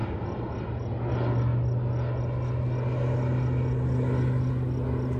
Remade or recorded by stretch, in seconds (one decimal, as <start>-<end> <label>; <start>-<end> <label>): 0.0-5.2 recorded

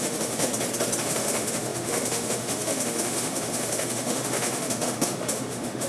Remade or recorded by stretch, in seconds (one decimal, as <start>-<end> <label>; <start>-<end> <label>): 0.0-0.5 remade; 0.5-1.0 recorded; 1.0-5.9 remade

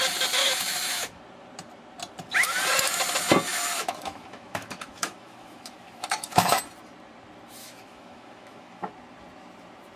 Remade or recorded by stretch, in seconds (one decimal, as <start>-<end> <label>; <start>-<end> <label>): 0.0-0.4 recorded; 0.4-1.2 remade; 1.2-3.5 recorded; 3.5-6.6 remade; 6.6-7.6 recorded; 7.6-8.9 remade; 8.9-10.0 recorded

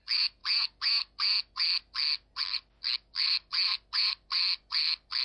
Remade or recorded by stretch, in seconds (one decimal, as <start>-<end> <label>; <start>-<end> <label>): 0.0-5.2 recorded